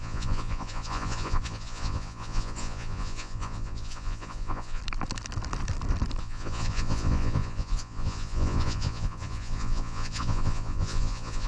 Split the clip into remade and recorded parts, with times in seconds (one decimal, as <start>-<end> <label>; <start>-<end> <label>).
0.0-4.8 remade; 4.8-6.2 recorded; 6.2-11.5 remade